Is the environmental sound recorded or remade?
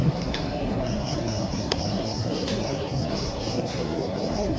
remade